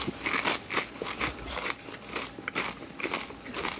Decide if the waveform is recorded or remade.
remade